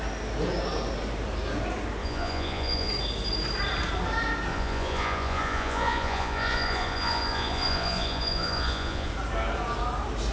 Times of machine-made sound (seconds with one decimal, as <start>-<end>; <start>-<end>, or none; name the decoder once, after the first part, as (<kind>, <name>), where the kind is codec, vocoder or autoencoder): 2.0-2.9 (vocoder, Vocos); 4.5-9.1